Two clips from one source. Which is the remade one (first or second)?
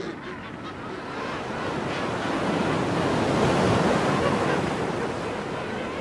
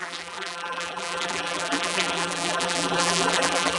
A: second